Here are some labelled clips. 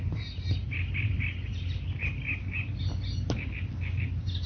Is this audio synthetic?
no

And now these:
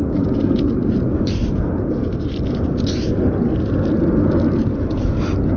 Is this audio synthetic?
no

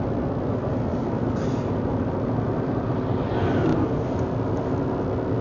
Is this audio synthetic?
no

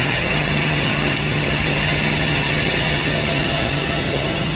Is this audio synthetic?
yes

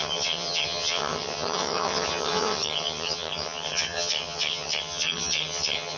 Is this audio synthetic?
yes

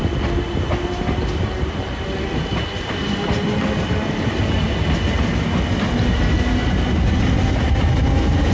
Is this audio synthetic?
no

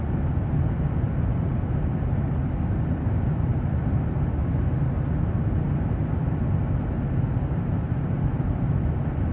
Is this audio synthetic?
no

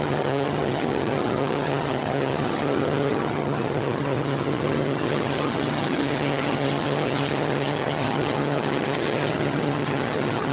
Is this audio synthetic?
yes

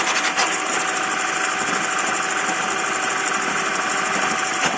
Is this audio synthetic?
no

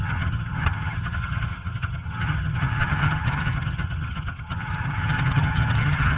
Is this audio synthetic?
yes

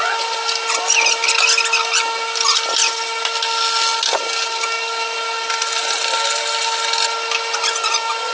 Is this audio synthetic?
no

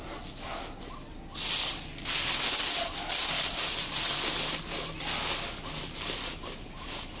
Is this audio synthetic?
no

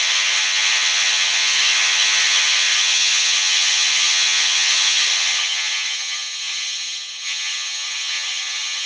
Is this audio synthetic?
yes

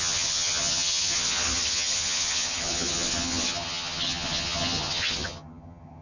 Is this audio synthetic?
yes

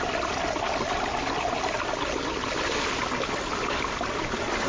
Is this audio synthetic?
no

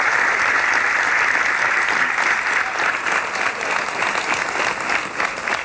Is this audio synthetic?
no